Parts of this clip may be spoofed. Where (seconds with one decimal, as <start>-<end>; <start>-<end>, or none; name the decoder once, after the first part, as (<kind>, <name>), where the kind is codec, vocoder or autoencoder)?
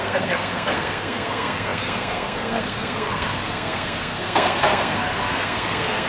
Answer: 0.0-6.1 (codec, SNAC)